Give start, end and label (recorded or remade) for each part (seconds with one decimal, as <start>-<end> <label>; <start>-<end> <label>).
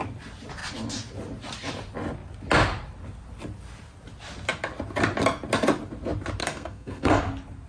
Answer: 0.0-6.4 recorded; 6.4-7.2 remade; 7.2-7.7 recorded